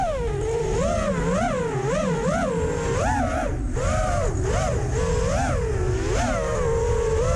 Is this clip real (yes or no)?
yes